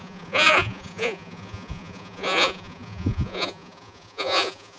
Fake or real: fake